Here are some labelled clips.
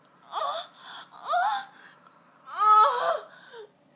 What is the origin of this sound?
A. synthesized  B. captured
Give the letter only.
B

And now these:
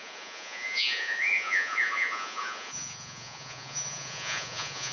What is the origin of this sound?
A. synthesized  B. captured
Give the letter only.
A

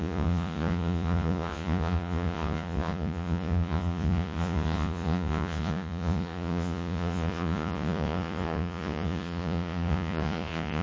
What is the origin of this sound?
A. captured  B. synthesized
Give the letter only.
B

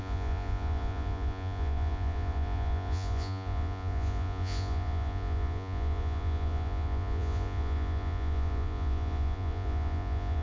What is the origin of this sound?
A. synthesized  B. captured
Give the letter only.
A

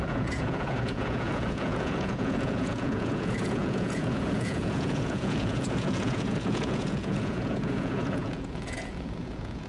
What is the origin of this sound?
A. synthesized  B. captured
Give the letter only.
A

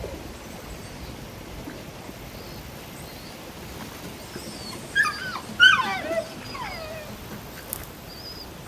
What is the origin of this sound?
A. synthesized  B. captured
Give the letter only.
B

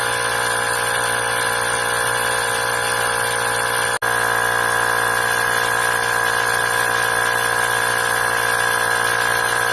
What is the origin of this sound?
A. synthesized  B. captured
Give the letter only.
B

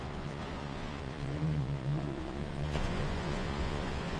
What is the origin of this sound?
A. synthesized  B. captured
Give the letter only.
A